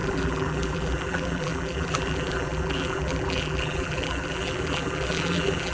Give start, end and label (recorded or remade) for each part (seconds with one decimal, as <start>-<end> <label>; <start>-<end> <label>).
0.0-5.7 remade